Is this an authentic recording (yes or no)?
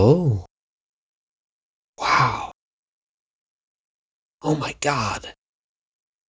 yes